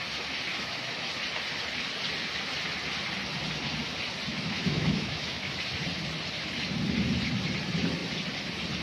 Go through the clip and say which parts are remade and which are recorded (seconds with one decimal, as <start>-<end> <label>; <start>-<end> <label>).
0.0-0.5 recorded; 0.5-1.1 remade; 1.1-4.3 recorded; 4.3-5.5 remade; 5.5-8.8 recorded